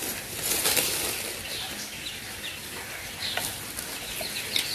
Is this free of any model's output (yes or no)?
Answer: yes